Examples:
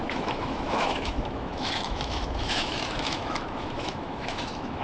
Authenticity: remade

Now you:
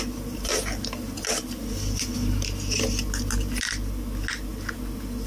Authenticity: recorded